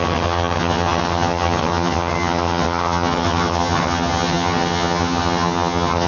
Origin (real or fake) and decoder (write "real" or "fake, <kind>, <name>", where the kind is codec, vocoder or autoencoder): fake, vocoder, HiFi-GAN